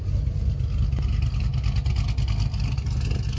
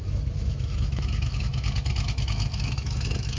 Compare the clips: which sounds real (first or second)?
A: first